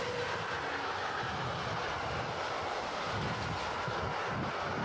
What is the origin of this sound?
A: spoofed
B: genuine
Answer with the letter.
B